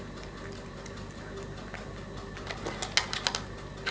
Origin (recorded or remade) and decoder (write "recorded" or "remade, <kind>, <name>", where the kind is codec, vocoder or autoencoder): recorded